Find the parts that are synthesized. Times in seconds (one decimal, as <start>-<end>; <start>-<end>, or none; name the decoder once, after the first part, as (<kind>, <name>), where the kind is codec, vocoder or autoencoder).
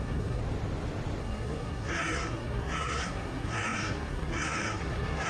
0.0-0.4 (codec, SNAC); 1.2-5.3